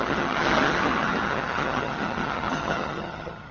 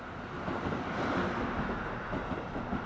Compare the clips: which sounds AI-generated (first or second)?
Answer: first